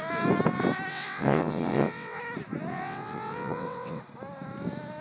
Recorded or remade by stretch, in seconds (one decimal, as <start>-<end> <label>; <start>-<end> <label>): 0.0-0.9 recorded; 0.9-2.2 remade; 2.2-2.7 recorded; 2.7-4.0 remade; 4.0-5.0 recorded